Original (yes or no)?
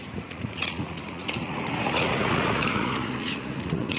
no